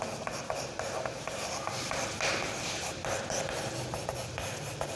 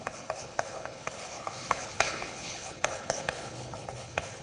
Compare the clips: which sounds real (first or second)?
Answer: first